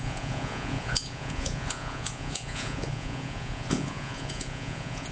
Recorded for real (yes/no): no